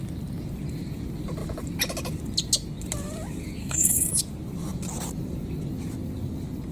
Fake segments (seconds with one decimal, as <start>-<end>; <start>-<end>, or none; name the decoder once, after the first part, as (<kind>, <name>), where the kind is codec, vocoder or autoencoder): 3.6-4.2 (codec, SNAC)